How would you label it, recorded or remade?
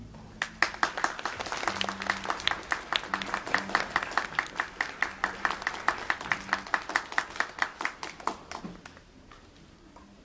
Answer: recorded